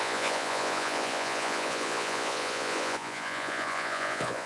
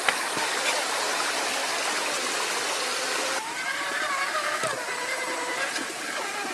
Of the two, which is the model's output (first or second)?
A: first